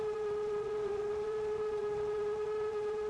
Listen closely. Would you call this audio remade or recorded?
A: remade